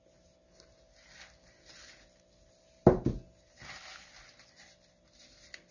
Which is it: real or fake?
real